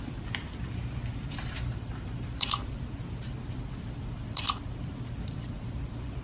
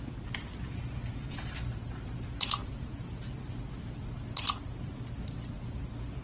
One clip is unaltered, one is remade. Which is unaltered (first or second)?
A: second